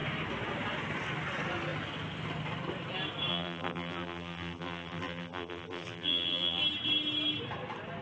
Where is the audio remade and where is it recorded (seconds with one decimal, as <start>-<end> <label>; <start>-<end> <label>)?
0.0-3.3 recorded; 3.3-6.6 remade; 6.6-8.0 recorded